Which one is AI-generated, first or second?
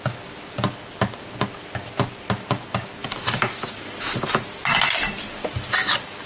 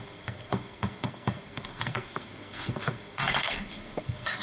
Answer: second